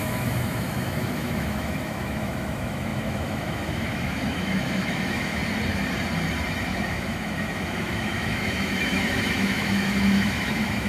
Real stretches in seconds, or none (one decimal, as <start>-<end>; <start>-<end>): 5.4-6.7